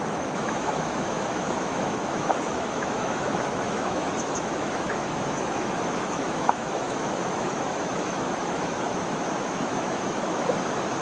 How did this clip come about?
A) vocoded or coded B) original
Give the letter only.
A